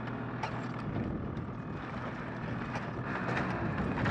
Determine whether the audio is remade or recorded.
recorded